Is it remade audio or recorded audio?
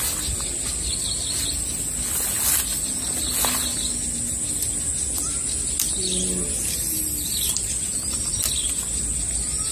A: recorded